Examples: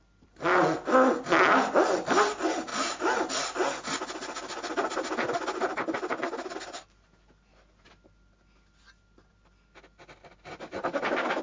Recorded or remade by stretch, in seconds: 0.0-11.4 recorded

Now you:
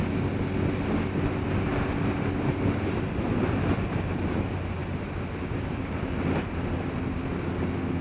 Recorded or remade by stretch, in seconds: 0.0-8.0 recorded

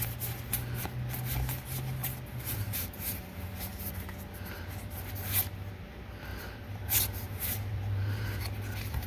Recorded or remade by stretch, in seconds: 0.0-2.0 recorded; 2.0-5.1 remade; 5.1-6.3 recorded; 6.3-8.4 remade; 8.4-9.1 recorded

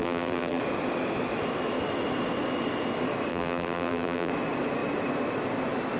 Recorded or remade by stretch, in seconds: 0.0-0.6 remade; 0.6-3.3 recorded; 3.3-4.3 remade; 4.3-6.0 recorded

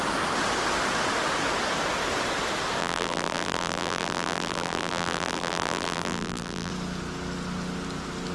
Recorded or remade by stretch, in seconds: 0.0-2.8 recorded; 2.8-6.7 remade; 6.7-8.3 recorded

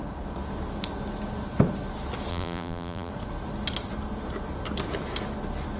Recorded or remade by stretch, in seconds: 0.0-2.3 recorded; 2.3-3.1 remade; 3.1-5.8 recorded